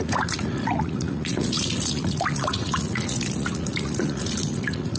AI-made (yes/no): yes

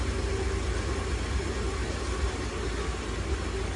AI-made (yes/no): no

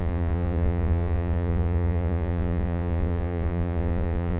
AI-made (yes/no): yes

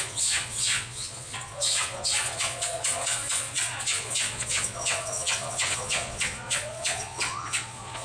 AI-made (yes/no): yes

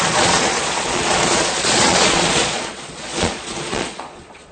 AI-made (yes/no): yes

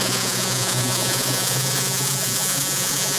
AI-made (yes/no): yes